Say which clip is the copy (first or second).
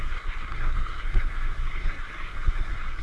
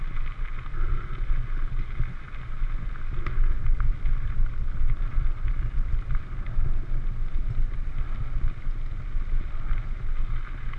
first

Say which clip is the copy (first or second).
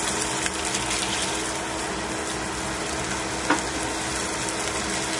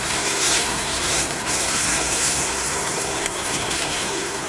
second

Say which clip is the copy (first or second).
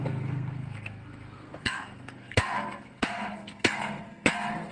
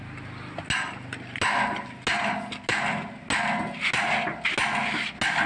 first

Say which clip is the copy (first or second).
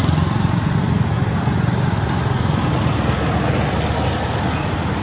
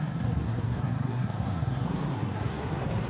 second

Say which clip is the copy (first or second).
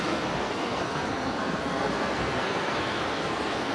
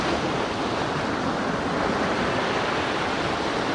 first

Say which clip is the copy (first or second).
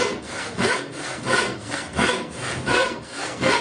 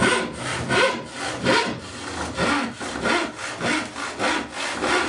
first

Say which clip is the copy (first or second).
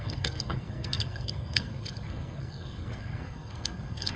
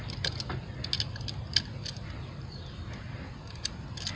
first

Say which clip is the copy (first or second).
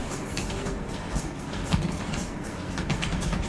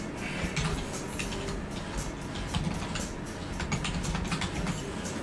first